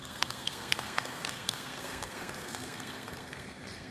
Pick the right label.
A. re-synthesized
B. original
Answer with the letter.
A